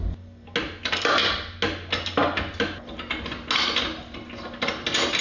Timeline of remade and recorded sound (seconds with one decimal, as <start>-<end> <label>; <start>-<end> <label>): 0.0-5.2 recorded